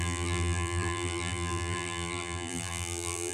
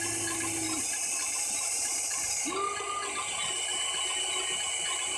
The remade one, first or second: first